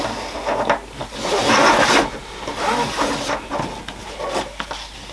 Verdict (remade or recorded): recorded